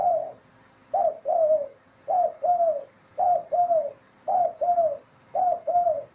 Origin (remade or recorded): recorded